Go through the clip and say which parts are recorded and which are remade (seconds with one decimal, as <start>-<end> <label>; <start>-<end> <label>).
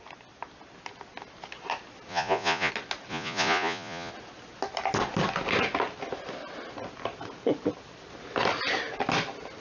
0.0-2.1 recorded; 2.1-2.7 remade; 2.7-3.1 recorded; 3.1-4.1 remade; 4.1-9.6 recorded